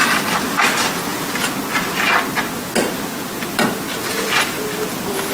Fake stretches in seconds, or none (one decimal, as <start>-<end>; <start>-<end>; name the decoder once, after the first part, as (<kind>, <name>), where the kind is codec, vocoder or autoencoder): none